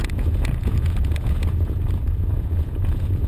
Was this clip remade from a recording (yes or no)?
yes